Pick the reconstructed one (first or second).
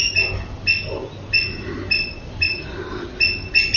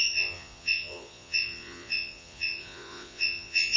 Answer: second